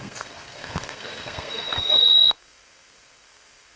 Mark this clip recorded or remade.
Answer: remade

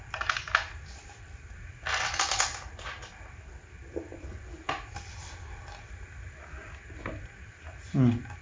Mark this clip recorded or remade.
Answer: recorded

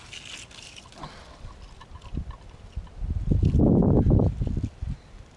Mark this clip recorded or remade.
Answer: recorded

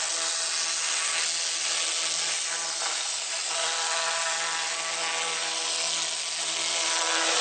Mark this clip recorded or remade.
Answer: recorded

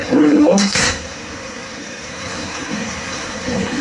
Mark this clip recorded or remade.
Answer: remade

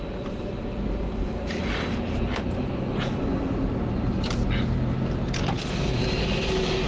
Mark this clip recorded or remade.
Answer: recorded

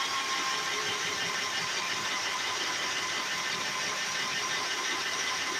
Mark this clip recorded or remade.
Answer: remade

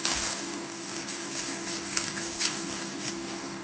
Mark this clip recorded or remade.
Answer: remade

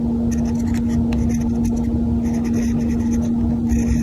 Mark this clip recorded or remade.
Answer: recorded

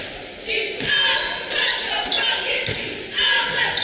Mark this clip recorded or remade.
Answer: recorded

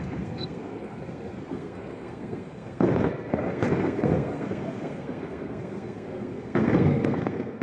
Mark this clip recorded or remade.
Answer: remade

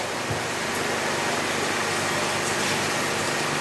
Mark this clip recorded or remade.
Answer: recorded